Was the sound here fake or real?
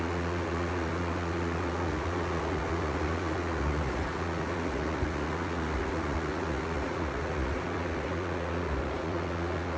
fake